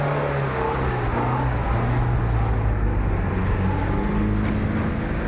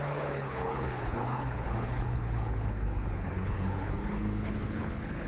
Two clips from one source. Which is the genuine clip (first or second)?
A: first